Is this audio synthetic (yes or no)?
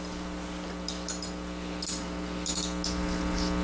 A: no